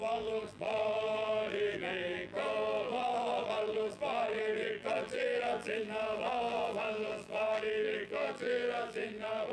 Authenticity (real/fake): fake